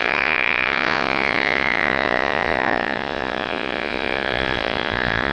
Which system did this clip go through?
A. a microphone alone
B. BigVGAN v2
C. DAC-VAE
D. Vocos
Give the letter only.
D